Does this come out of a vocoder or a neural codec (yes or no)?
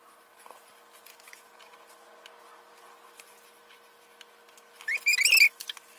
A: no